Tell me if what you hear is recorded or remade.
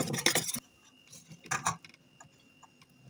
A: recorded